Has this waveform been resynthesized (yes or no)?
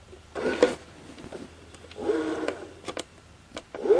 no